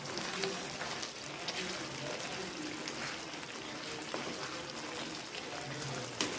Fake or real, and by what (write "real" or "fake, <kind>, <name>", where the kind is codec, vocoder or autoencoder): real